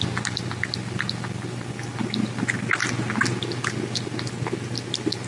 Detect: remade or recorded recorded